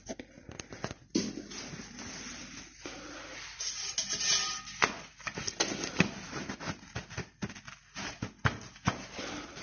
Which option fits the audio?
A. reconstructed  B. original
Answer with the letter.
B